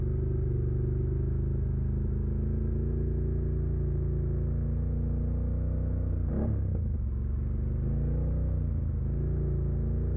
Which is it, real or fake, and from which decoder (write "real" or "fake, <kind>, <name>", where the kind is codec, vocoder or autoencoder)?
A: real